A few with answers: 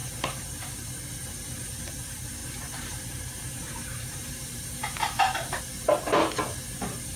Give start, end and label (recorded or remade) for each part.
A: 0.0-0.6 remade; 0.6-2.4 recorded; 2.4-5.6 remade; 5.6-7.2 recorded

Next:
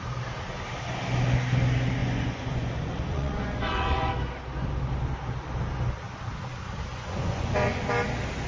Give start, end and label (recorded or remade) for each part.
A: 0.0-2.0 recorded; 2.0-4.1 remade; 4.1-6.9 recorded; 6.9-7.8 remade; 7.8-8.5 recorded

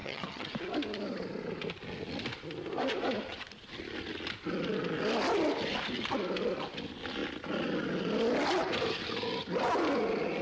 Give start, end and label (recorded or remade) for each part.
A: 0.0-0.5 remade; 0.5-10.4 recorded

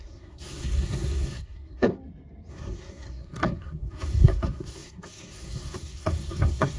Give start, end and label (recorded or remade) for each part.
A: 0.0-1.9 remade; 1.9-2.5 recorded; 2.5-6.8 remade